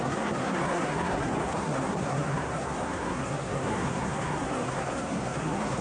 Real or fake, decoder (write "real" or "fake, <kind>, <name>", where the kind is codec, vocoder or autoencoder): fake, codec, SNAC